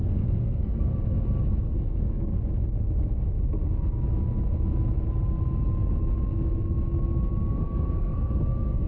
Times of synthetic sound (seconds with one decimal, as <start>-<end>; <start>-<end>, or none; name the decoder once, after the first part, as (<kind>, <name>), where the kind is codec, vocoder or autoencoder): 0.0-0.9 (codec, SNAC); 1.6-2.3; 7.5-8.9